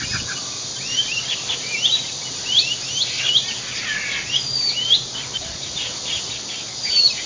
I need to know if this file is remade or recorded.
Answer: remade